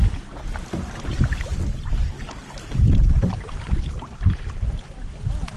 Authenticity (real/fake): real